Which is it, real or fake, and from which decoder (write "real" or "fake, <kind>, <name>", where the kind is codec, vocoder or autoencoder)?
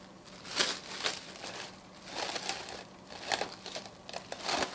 real